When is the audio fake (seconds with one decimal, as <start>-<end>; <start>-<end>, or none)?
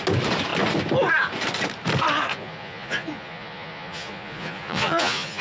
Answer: 2.3-5.4